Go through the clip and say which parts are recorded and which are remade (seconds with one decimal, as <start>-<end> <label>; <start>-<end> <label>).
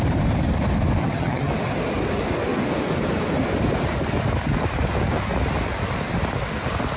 0.0-1.0 recorded; 1.0-1.5 remade; 1.5-7.0 recorded